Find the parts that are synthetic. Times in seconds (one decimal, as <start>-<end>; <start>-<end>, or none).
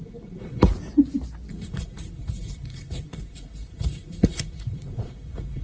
0.0-0.7; 1.5-5.6